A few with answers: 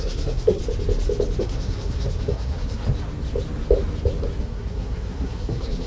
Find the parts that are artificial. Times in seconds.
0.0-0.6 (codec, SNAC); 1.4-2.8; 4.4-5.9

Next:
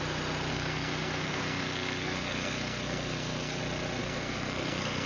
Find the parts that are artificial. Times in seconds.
0.5-3.6 (codec, SNAC); 4.0-5.1

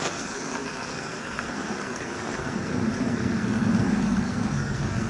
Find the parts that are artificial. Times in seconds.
0.0-5.1 (codec, SNAC)

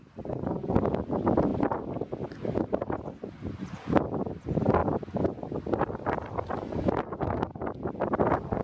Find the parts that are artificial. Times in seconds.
none

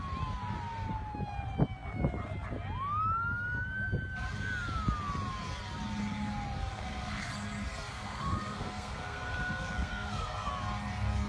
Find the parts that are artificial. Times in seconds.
6.7-7.3 (codec, SNAC); 7.9-10.5

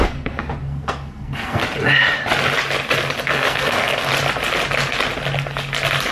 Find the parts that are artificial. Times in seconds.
0.0-1.6 (codec, SNAC); 3.2-4.1

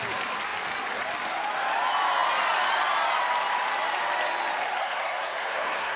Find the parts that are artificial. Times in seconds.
4.8-6.0 (codec, SNAC)